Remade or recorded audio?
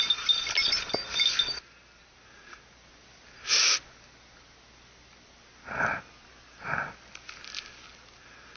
recorded